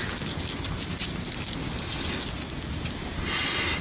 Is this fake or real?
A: real